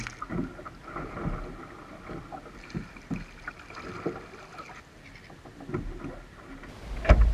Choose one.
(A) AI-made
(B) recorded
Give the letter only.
B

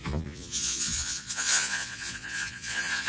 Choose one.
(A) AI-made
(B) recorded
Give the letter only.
A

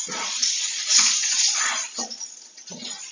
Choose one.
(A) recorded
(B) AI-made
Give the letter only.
B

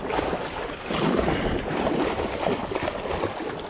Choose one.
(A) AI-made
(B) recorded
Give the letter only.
B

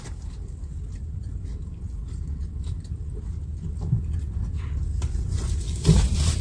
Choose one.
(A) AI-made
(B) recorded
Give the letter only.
B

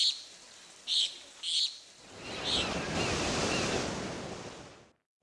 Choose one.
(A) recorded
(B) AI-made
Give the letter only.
A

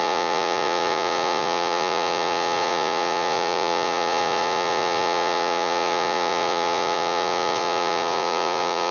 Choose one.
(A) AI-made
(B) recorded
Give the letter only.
A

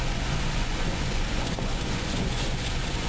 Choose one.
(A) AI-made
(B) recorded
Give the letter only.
A